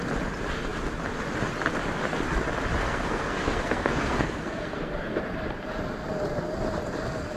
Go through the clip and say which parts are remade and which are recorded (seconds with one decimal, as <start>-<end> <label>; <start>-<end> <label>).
0.0-2.8 recorded; 2.8-5.2 remade; 5.2-7.4 recorded